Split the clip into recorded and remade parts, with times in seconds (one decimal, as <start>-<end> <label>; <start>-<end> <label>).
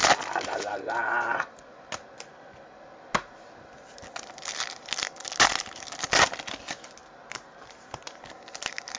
0.0-9.0 recorded